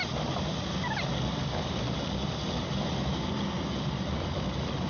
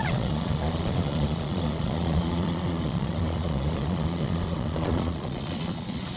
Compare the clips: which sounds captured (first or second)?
first